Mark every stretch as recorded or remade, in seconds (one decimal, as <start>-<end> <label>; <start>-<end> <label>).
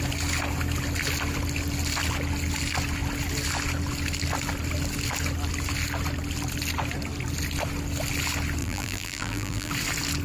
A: 0.0-8.6 recorded; 8.6-9.7 remade; 9.7-10.2 recorded